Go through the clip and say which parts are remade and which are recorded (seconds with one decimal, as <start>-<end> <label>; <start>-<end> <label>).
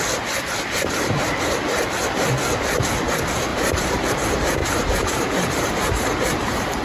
0.0-3.5 recorded; 3.5-4.1 remade; 4.1-4.6 recorded; 4.6-6.8 remade